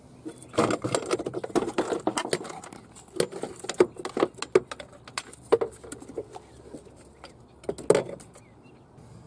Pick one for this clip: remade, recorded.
recorded